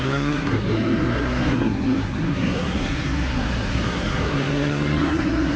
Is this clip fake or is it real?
fake